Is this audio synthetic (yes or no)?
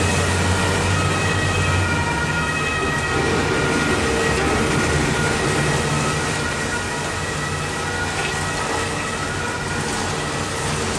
no